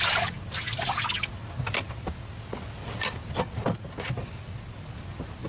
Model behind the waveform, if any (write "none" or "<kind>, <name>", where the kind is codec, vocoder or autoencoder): none